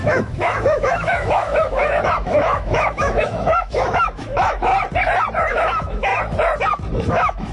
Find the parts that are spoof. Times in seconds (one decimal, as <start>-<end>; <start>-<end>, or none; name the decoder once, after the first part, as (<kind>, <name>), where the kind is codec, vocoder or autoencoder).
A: 0.0-4.7 (autoencoder, DAC-VAE); 5.5-6.1; 7.1-7.5